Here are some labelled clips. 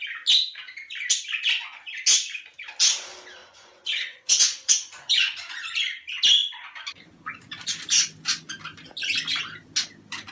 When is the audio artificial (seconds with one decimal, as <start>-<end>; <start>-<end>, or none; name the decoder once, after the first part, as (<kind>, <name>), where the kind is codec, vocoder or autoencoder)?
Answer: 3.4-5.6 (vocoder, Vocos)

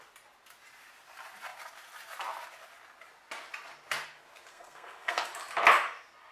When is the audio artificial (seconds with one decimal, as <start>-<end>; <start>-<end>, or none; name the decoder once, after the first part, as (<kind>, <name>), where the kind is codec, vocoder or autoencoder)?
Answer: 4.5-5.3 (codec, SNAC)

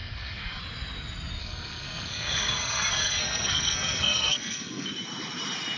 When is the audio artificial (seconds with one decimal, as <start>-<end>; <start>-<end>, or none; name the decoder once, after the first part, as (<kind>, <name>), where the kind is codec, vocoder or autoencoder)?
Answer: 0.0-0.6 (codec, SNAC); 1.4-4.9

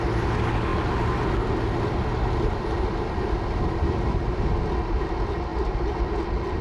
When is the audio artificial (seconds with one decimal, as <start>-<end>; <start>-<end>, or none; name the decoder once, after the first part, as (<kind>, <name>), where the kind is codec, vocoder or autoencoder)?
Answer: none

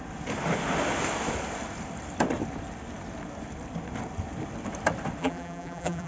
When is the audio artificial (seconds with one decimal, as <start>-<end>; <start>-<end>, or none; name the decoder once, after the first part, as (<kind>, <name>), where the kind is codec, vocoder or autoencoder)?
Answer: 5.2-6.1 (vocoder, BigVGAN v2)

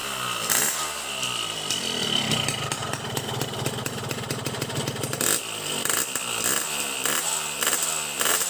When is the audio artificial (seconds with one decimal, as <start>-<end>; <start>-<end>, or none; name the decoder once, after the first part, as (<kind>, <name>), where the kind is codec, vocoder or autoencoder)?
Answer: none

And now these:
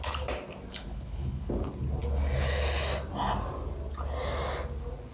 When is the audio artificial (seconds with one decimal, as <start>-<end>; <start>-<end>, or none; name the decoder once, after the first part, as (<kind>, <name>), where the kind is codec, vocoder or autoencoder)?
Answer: 0.7-1.5 (codec, HILCodec)